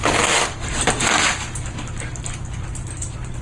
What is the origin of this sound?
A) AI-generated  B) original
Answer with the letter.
B